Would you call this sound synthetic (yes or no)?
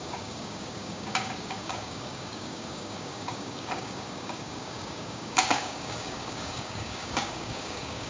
yes